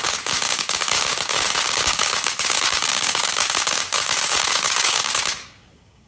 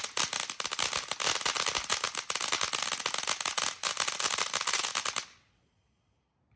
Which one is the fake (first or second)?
first